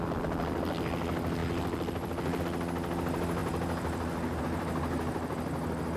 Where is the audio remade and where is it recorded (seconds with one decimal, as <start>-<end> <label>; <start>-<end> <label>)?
0.0-6.0 recorded